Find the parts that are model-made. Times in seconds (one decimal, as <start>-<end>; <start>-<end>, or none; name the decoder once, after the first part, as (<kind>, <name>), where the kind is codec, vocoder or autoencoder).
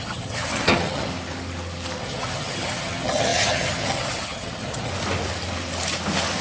0.0-1.1 (vocoder, HiFi-GAN); 2.0-4.9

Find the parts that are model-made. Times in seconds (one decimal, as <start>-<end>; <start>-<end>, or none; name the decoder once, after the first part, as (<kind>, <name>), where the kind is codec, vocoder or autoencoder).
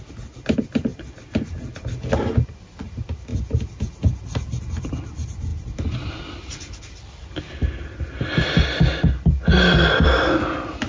none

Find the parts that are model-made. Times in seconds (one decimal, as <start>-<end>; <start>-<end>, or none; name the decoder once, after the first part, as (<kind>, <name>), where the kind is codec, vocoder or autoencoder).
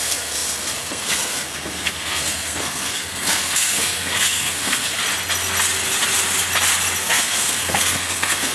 0.0-5.0 (codec, SNAC); 7.0-8.5